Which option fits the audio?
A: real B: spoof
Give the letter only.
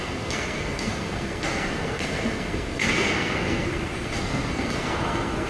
B